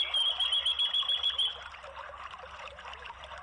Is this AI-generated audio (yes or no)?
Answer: no